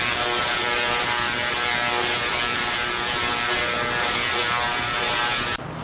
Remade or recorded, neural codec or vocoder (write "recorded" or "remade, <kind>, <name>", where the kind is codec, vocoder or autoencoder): recorded